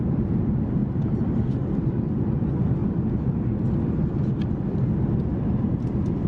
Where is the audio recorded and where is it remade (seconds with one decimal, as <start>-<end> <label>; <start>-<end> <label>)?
0.0-6.3 recorded